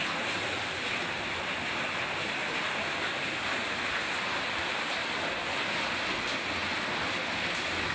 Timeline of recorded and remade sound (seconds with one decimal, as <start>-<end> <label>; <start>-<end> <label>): 0.0-7.9 recorded